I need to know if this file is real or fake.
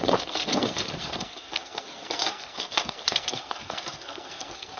fake